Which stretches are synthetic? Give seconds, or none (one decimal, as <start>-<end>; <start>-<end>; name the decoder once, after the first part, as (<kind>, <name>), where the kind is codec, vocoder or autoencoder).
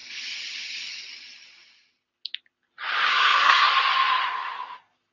3.1-3.7 (codec, SNAC)